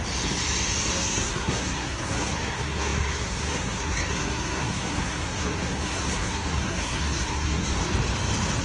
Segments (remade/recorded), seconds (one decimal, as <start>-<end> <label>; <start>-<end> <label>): 0.0-0.9 recorded; 0.9-7.8 remade; 7.8-8.6 recorded